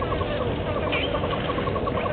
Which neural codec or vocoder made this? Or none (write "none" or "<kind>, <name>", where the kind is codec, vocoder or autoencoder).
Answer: none